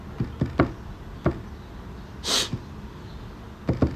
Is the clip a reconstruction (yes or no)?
no